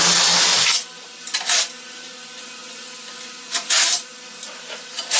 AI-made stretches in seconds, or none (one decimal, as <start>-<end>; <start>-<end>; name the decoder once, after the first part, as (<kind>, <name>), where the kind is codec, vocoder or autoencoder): 0.0-5.2 (vocoder, BigVGAN v2)